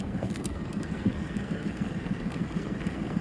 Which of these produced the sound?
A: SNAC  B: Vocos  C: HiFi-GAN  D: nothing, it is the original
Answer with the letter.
A